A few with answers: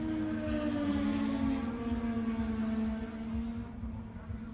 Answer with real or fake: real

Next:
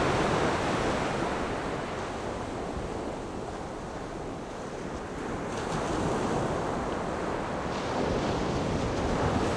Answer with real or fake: real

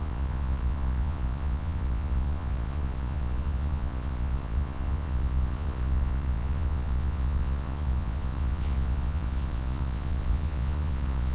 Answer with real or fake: fake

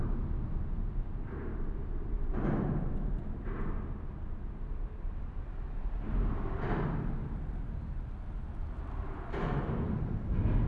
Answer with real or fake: real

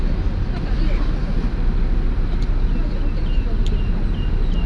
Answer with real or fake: real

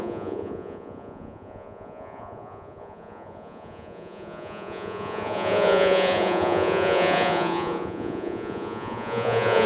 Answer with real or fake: fake